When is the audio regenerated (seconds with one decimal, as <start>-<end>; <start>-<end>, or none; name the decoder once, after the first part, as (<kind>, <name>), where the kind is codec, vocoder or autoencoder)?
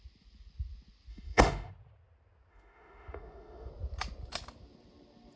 1.1-1.7 (autoencoder, DAC-VAE); 2.5-3.7